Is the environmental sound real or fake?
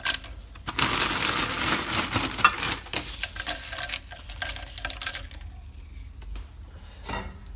real